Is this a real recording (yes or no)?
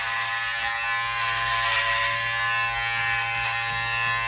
yes